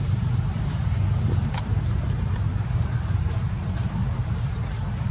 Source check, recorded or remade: remade